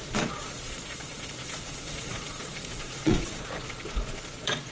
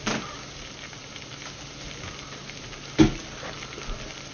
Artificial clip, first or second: first